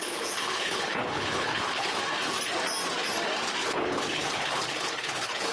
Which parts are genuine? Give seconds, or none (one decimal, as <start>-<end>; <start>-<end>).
2.0-3.6